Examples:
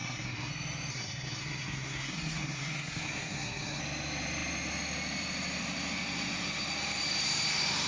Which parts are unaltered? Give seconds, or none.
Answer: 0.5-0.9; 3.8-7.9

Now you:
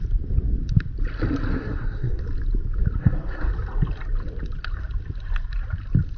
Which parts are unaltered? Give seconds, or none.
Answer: 0.0-1.5; 2.2-3.0; 3.5-6.2

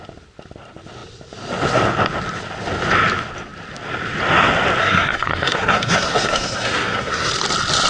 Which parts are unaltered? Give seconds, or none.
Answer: 0.0-4.8; 7.3-7.9

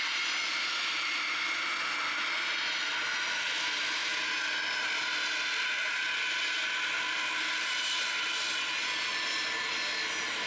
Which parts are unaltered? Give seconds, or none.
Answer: 0.0-10.5